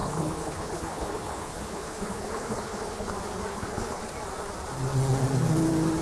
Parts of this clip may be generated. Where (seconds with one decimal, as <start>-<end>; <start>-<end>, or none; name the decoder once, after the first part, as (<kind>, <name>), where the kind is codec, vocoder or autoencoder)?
0.0-3.1 (codec, HILCodec); 3.5-4.0